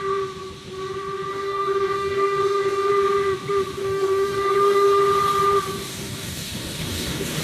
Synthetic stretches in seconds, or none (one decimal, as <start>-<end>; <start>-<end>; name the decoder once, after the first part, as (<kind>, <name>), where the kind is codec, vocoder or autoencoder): 1.3-2.9 (codec, DAC); 3.8-5.0; 5.9-7.4